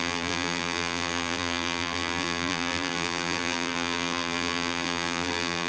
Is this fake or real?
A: fake